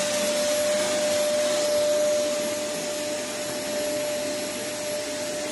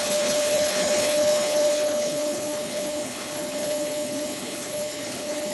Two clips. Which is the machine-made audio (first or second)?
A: second